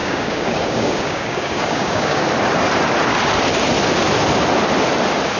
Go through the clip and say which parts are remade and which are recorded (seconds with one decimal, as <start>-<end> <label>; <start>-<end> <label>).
0.0-2.2 remade; 2.2-5.4 recorded